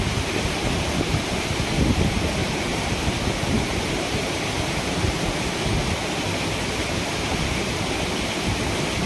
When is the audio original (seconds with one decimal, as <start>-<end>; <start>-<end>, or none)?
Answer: 0.0-2.4; 5.2-9.1